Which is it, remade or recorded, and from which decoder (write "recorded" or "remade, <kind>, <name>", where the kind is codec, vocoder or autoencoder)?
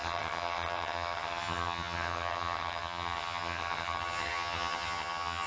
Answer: remade, vocoder, HiFi-GAN